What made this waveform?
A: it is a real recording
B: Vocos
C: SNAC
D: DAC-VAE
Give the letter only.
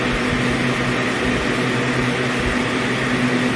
A